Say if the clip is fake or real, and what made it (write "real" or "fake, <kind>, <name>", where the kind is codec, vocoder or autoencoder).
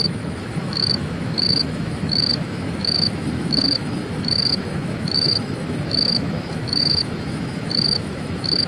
fake, autoencoder, DAC-VAE